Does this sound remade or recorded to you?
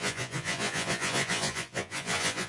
remade